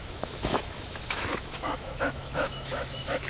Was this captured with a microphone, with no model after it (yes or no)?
no